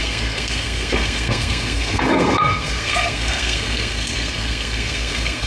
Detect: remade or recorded remade